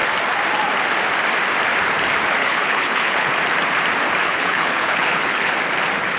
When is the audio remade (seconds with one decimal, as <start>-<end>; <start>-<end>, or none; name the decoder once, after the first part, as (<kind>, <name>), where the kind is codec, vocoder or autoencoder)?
2.4-3.3 (codec, HILCodec); 4.2-5.5